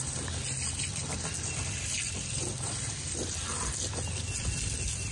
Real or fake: real